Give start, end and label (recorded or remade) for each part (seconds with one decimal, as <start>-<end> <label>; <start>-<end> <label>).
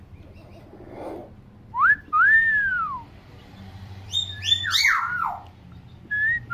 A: 0.0-2.7 recorded; 2.7-5.0 remade; 5.0-6.5 recorded